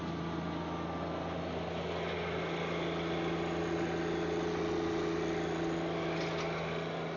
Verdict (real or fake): real